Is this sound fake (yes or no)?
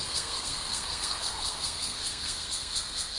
yes